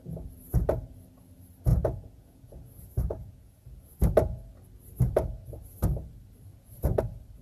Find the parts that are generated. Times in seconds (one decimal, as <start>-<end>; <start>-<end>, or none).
1.7-4.0; 6.5-7.0